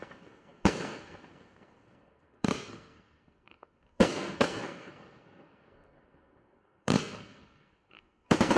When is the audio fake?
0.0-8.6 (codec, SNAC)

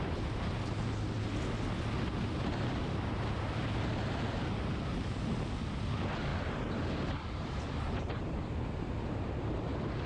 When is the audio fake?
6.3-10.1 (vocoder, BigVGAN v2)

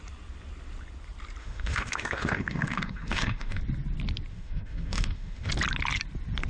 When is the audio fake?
1.4-3.6 (autoencoder, DAC-VAE); 4.3-5.5

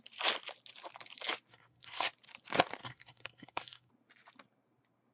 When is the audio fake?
1.5-2.1 (codec, SNAC); 2.8-3.9

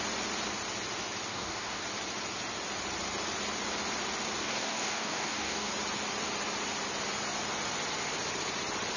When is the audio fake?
1.3-1.8 (codec, DAC); 4.4-5.7

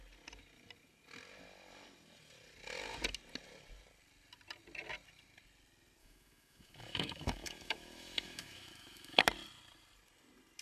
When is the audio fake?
6.0-9.2 (autoencoder, DAC-VAE)

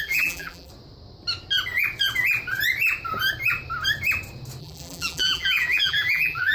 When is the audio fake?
0.0-0.7 (vocoder, BigVGAN v2); 4.6-6.5